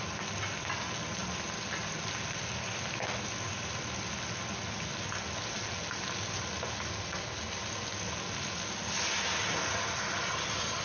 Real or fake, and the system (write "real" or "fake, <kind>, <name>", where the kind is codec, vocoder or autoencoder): real